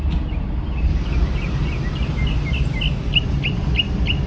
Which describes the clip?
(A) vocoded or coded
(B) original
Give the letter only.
B